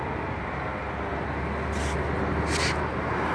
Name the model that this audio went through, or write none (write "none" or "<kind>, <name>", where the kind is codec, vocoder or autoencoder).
none